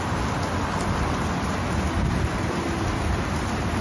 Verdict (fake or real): real